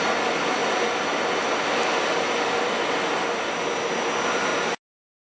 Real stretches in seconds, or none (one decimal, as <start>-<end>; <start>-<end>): 0.0-5.2